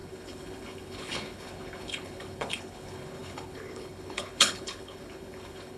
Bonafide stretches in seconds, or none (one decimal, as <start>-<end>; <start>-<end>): none